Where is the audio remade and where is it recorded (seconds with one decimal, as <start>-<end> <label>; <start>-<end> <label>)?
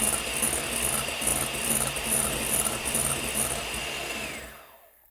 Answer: 0.0-5.1 recorded